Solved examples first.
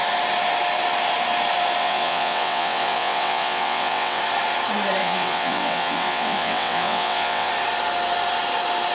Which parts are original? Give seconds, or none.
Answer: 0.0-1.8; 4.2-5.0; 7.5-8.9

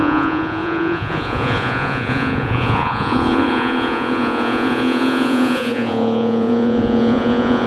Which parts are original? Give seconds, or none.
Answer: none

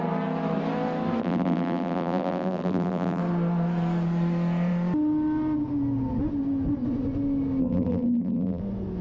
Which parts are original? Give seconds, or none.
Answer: 0.0-1.2; 3.2-7.6; 8.6-9.0

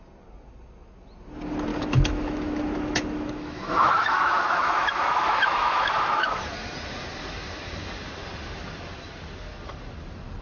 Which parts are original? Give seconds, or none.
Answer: 0.0-1.7; 6.4-10.4

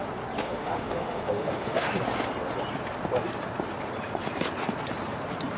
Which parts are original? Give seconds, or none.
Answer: 0.0-0.4; 1.9-5.6

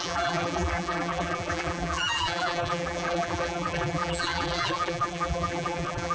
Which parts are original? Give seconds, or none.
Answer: none

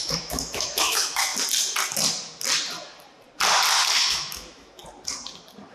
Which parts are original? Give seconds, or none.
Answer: 1.3-4.0; 4.8-5.7

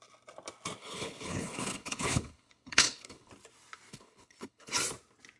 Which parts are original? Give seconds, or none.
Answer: 0.0-0.8; 3.3-3.9; 4.7-5.4